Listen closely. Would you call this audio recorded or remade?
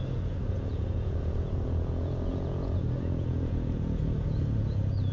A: remade